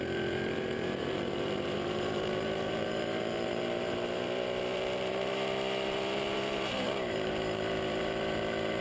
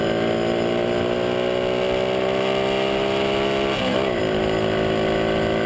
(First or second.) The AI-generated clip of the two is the first